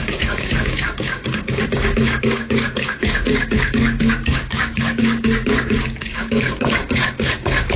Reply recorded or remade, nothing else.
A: remade